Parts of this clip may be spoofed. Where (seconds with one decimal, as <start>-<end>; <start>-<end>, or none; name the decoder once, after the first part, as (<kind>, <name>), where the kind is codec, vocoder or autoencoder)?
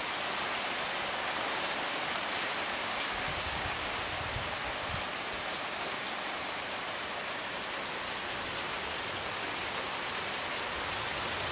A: 3.3-3.9 (codec, DAC)